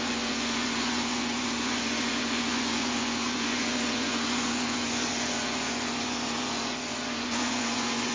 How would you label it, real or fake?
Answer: fake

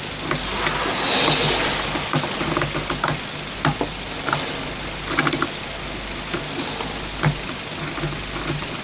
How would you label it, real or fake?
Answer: real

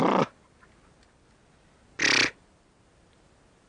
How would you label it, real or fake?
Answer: real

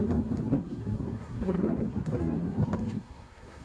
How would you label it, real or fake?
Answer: fake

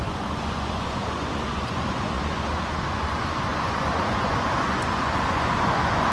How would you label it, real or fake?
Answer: fake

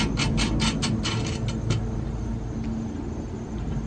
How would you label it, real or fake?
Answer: real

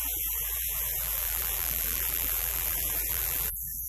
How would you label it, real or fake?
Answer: fake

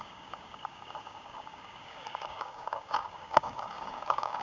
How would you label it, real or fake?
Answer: fake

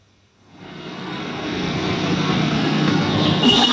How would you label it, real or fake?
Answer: fake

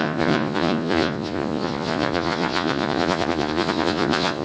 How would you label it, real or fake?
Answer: fake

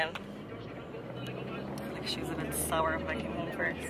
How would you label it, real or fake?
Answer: real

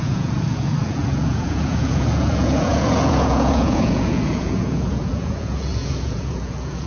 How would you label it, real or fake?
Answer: fake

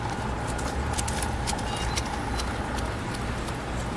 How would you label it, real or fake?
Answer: real